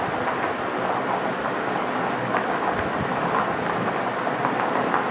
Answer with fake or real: real